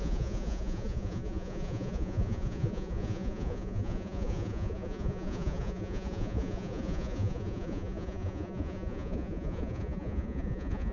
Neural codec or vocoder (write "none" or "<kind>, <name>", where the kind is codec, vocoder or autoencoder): vocoder, Vocos